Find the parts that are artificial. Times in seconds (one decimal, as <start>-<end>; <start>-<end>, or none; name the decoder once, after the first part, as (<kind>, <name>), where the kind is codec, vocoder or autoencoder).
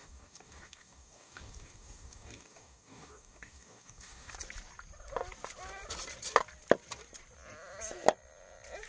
0.0-4.3 (codec, DAC)